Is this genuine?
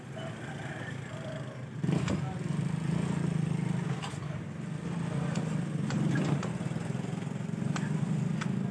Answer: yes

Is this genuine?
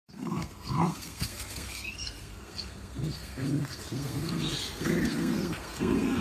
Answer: no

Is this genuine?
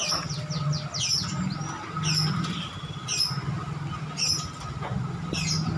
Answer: yes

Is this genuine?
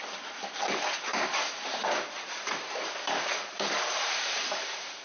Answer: no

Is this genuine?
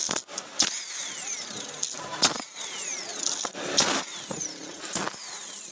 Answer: yes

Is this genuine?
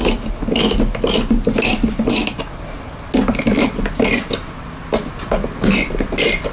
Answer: yes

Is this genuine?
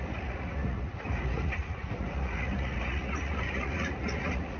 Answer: no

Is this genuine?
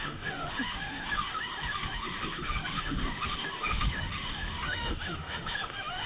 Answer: no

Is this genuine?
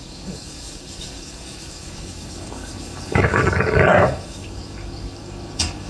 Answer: no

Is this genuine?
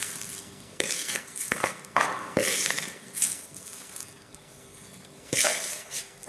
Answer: no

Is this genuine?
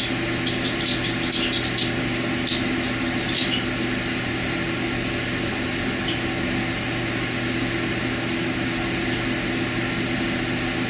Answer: yes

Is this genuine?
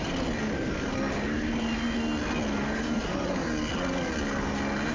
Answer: yes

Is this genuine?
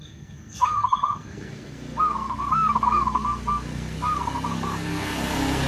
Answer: no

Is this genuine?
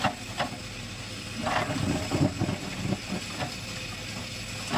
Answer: yes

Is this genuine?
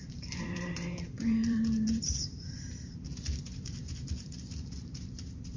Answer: no